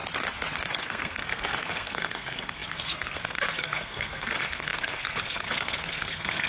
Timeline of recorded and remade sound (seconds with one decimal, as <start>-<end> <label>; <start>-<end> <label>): 0.0-0.8 recorded; 0.8-6.5 remade